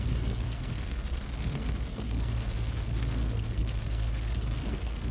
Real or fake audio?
fake